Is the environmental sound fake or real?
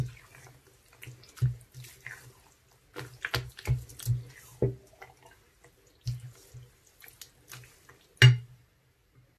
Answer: real